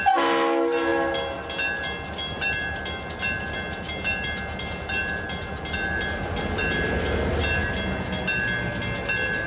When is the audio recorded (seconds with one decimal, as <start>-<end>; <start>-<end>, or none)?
0.0-9.5

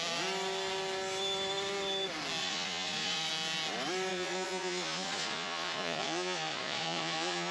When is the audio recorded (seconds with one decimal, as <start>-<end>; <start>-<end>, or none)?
0.0-2.4; 3.3-4.1

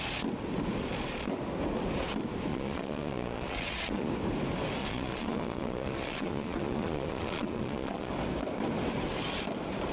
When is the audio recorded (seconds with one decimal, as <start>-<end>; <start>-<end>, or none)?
0.0-2.5; 4.1-4.8; 8.1-9.9

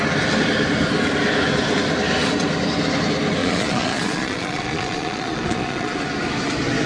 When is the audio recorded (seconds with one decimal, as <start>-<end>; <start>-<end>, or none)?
0.0-3.4; 6.0-6.9

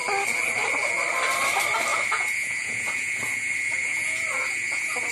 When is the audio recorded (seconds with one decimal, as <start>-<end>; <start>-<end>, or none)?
0.0-1.9